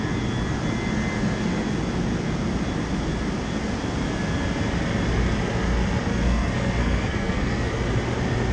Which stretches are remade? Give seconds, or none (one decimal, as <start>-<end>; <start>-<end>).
6.1-7.7